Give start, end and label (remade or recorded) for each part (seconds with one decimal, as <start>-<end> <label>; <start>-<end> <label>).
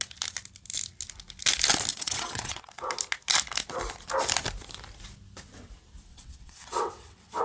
0.0-1.9 recorded; 1.9-2.7 remade; 2.7-6.1 recorded; 6.1-7.4 remade